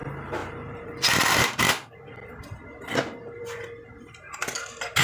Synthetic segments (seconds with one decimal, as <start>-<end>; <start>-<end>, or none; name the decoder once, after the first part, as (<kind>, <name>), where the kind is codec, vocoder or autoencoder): none